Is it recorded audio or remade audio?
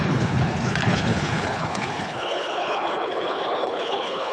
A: remade